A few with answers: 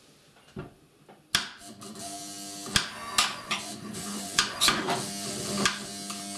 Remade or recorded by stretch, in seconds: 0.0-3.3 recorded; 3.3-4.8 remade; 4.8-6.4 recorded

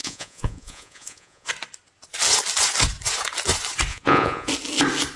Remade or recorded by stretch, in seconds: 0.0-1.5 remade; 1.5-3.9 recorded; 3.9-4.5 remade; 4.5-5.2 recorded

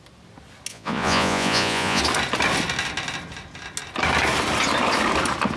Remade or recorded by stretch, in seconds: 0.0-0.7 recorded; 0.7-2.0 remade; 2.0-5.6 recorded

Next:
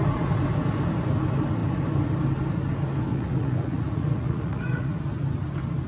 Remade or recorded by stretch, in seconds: 0.0-3.1 recorded; 3.1-5.0 remade; 5.0-5.9 recorded

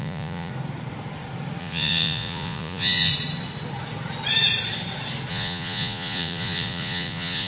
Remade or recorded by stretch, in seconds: 0.0-0.5 remade; 0.5-1.6 recorded; 1.6-3.1 remade; 3.1-5.3 recorded; 5.3-7.5 remade

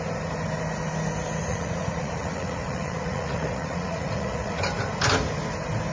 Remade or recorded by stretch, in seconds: 0.0-1.5 recorded; 1.5-4.6 remade; 4.6-5.9 recorded